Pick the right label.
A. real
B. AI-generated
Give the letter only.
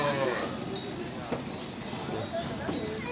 A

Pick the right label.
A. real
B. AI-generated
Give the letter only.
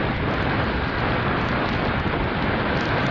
A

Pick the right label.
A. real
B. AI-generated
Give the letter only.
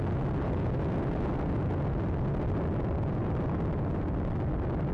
A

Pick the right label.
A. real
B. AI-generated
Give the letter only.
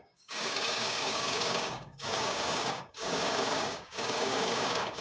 B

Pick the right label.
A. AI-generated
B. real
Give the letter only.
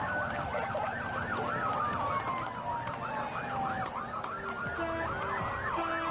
B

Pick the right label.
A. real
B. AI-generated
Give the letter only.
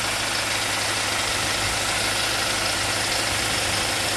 A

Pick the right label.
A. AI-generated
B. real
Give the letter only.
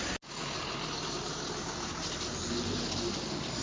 B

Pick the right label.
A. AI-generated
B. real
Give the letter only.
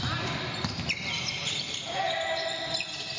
B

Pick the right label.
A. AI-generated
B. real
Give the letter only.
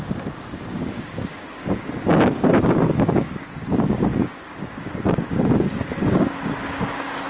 A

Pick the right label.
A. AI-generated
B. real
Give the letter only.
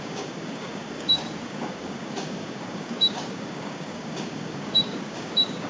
A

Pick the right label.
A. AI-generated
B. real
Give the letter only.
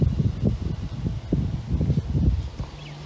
B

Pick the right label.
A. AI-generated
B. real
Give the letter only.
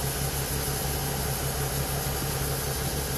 B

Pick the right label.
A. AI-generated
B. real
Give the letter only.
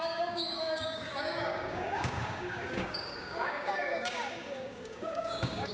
A